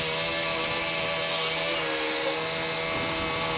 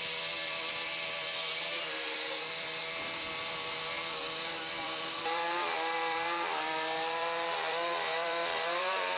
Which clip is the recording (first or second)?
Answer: first